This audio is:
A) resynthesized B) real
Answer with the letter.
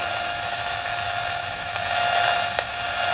A